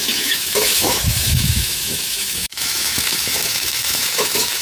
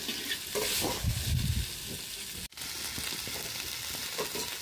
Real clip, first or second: second